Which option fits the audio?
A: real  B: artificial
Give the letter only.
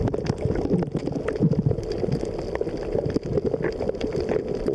A